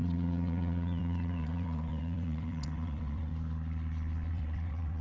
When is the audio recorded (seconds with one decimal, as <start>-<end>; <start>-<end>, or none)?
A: 3.3-4.3